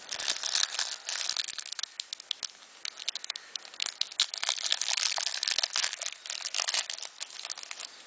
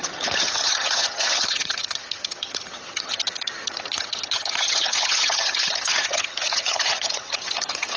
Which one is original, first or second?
first